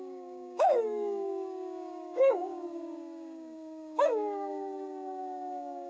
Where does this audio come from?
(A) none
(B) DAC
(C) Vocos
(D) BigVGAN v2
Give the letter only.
B